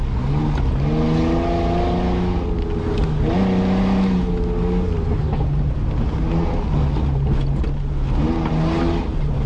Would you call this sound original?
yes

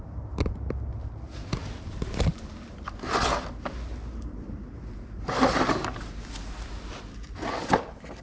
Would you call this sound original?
yes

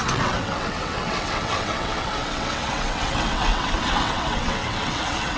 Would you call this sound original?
no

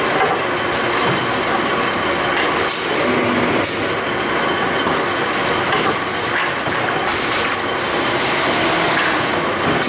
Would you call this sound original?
yes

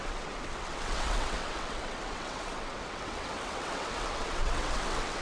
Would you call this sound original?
no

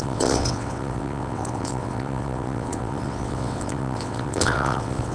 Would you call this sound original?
no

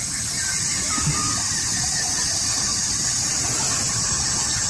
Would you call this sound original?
yes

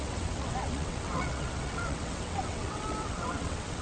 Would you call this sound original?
no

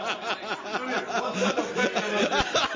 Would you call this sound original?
yes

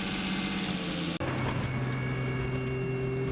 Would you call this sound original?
yes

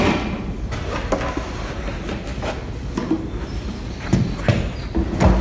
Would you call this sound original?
yes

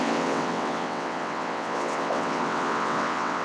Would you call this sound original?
no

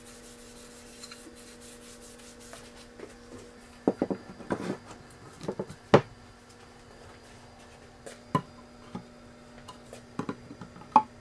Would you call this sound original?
yes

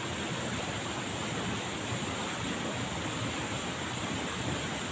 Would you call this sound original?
yes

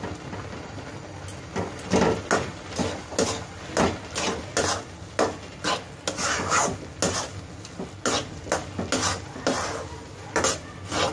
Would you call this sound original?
yes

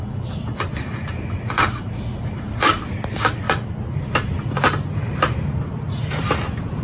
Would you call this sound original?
yes